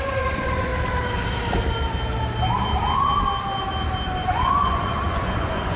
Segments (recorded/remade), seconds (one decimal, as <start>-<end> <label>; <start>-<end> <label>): 0.0-0.7 remade; 0.7-4.2 recorded; 4.2-5.8 remade